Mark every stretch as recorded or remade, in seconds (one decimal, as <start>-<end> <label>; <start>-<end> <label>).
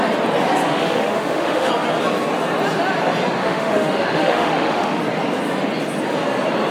0.0-0.7 recorded; 0.7-1.7 remade; 1.7-3.4 recorded; 3.4-5.0 remade; 5.0-6.7 recorded